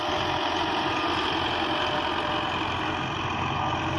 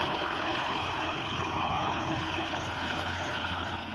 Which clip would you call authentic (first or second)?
first